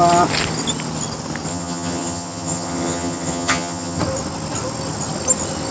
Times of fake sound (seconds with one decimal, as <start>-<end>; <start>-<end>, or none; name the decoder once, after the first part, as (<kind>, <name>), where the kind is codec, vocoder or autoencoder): 1.5-4.0 (vocoder, HiFi-GAN)